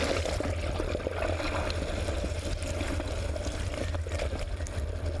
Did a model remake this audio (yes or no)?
no